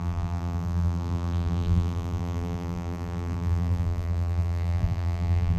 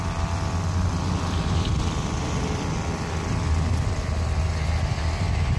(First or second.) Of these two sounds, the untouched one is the second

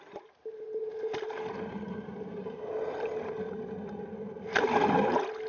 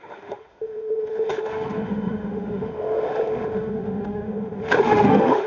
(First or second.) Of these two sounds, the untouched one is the first